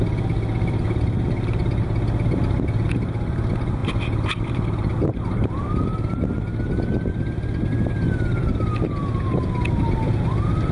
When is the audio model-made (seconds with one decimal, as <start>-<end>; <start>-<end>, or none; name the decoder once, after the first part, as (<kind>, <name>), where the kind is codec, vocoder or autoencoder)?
none